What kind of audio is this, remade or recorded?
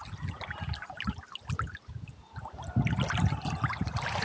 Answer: recorded